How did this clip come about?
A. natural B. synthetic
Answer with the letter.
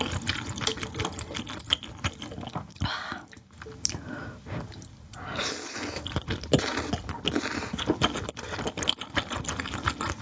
A